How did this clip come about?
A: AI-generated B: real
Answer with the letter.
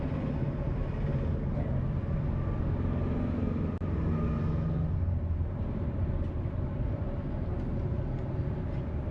B